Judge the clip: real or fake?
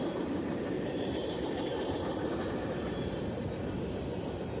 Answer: fake